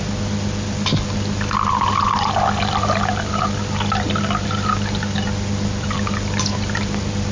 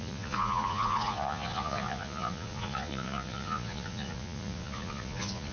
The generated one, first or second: second